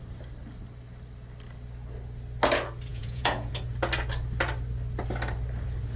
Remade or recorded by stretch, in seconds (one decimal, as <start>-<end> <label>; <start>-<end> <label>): 0.0-2.9 recorded; 2.9-3.5 remade; 3.5-6.0 recorded